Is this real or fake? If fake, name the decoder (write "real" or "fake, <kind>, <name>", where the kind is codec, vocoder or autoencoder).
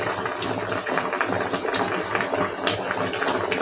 real